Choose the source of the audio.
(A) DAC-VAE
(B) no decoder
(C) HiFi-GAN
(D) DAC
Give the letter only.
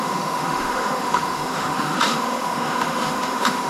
A